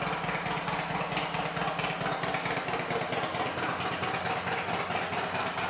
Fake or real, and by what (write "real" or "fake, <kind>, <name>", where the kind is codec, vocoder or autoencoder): real